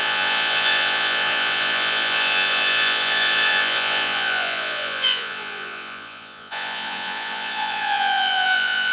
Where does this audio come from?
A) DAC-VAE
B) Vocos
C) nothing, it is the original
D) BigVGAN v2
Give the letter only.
B